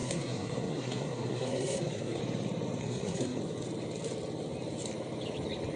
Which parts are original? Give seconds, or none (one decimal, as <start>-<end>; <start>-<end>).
2.2-2.8; 3.4-5.8